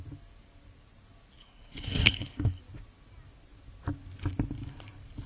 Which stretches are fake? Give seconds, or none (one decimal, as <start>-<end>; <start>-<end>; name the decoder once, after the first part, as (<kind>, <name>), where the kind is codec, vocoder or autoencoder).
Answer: 1.4-2.6 (codec, HILCodec)